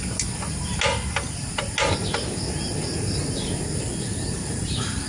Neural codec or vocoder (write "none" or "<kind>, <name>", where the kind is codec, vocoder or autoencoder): none